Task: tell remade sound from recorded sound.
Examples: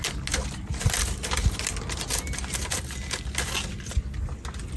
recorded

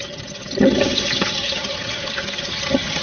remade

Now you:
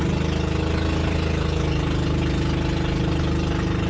recorded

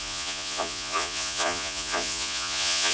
remade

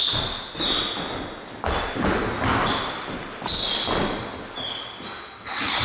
recorded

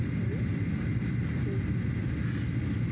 recorded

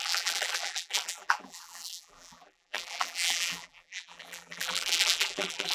remade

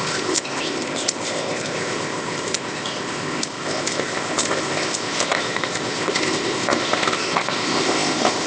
remade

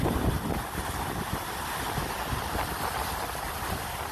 recorded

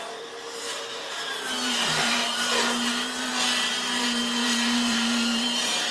remade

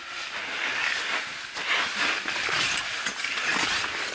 recorded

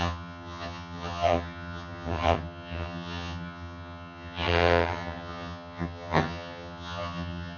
remade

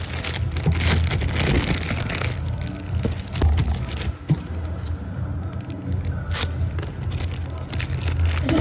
recorded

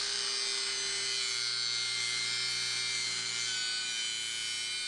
recorded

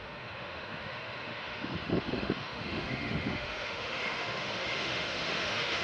remade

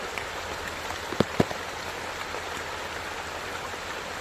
remade